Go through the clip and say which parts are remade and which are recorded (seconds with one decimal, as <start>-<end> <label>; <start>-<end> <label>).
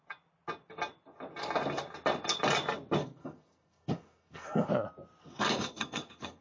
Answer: 0.0-3.0 recorded; 3.0-4.7 remade; 4.7-5.2 recorded; 5.2-6.4 remade